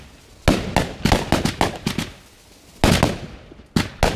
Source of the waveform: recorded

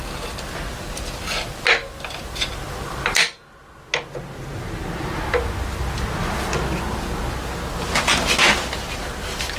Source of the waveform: recorded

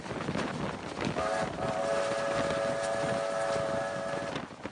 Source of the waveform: recorded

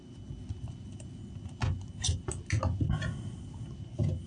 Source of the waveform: recorded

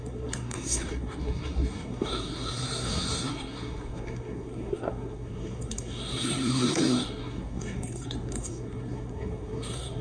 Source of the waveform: remade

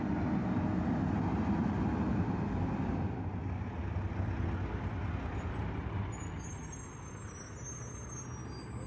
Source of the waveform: recorded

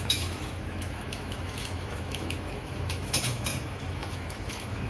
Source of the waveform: remade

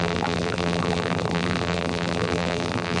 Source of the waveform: remade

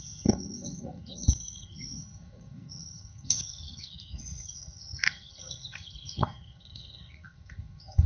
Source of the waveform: remade